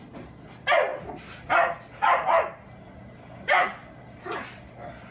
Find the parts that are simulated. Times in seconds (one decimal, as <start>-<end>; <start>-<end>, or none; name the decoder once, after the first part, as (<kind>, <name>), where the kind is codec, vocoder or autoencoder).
none

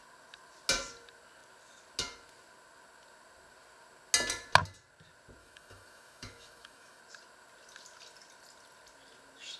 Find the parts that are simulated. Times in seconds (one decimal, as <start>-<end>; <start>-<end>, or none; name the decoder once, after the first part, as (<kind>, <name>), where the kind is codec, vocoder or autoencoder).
5.4-7.0 (autoencoder, DAC-VAE)

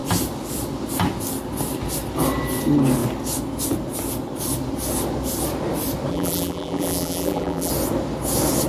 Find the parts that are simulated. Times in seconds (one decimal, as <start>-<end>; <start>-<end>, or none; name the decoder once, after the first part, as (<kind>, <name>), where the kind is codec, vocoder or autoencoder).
6.1-7.7 (vocoder, BigVGAN v2)

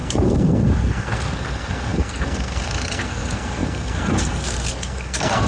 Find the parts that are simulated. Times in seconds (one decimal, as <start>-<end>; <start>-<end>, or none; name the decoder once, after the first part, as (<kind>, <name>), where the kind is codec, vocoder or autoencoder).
0.0-5.5 (codec, SNAC)

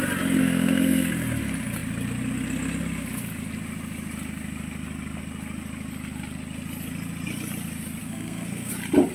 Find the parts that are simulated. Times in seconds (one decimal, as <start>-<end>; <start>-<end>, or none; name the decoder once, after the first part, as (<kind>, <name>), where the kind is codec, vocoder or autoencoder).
0.4-1.1 (codec, SNAC); 8.0-8.7

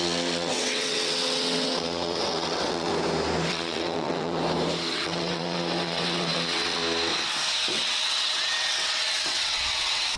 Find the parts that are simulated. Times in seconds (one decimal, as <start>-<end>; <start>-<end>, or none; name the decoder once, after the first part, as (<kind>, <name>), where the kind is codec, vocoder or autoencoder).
0.0-2.9 (vocoder, WaveNeXt); 3.5-4.4; 4.9-6.8; 7.7-10.2

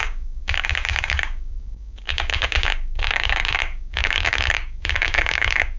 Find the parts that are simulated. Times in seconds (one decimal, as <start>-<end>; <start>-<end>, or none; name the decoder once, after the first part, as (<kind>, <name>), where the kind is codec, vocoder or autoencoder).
0.0-5.8 (codec, DAC)